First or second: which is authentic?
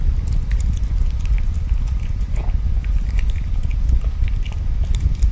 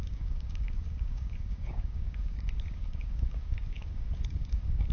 first